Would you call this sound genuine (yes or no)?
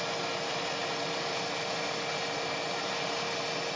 yes